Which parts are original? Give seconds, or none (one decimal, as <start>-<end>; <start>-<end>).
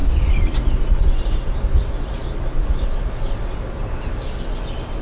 0.0-5.0